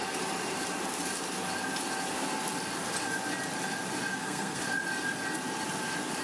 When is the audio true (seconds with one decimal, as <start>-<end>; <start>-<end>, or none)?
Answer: 0.0-4.1; 4.6-6.2